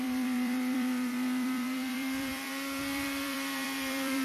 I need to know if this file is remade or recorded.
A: remade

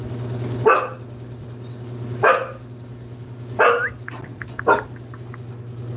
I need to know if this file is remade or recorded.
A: recorded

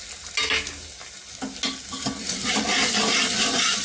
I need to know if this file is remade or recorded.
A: recorded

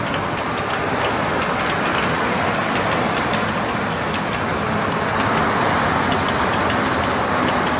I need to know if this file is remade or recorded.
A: recorded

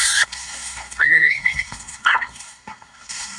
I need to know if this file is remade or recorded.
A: remade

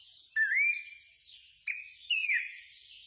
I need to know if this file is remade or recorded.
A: recorded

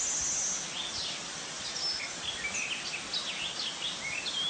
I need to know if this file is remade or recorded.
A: recorded